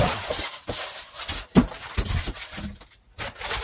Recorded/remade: remade